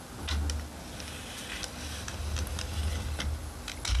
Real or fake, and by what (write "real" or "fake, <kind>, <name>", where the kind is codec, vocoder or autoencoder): real